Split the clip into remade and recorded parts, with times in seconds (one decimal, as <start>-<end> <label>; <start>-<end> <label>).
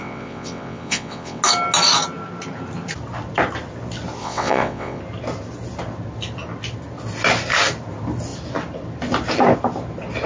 0.0-1.4 remade; 1.4-4.2 recorded; 4.2-5.0 remade; 5.0-10.3 recorded